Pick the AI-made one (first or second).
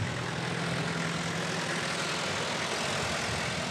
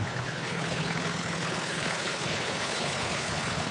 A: second